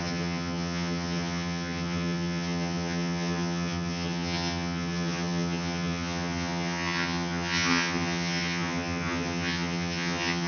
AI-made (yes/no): yes